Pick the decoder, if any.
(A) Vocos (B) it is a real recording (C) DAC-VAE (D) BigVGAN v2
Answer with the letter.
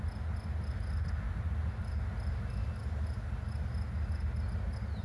B